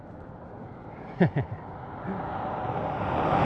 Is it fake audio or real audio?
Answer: real